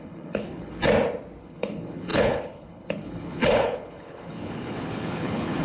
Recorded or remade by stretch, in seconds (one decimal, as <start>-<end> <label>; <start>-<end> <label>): 0.0-0.8 remade; 0.8-1.4 recorded; 1.4-5.6 remade